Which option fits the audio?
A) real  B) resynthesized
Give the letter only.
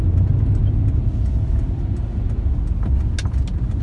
A